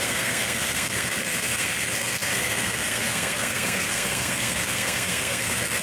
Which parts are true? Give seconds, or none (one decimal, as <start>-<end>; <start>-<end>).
none